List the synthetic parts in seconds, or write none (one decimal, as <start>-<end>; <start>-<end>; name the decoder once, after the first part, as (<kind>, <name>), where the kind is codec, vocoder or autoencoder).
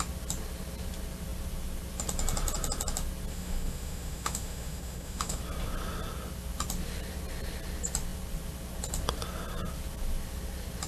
3.3-5.4 (autoencoder, DAC-VAE)